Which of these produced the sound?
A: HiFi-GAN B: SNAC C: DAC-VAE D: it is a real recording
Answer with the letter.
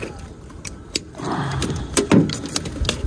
D